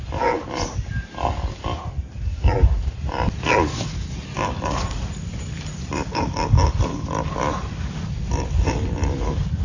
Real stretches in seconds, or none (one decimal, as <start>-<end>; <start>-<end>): 0.0-9.6